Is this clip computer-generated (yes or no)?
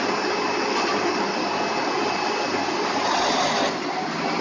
no